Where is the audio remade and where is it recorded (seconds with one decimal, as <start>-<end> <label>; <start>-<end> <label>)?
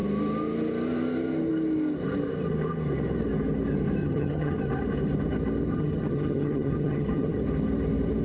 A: 0.0-4.0 recorded; 4.0-4.6 remade; 4.6-5.7 recorded; 5.7-7.4 remade; 7.4-8.2 recorded